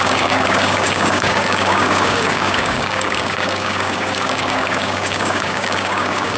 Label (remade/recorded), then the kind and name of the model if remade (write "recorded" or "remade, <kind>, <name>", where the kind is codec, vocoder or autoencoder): remade, codec, DAC